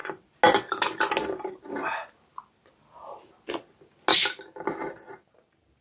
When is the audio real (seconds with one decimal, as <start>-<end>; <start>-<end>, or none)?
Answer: 0.0-5.8